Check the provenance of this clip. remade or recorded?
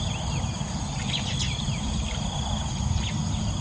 recorded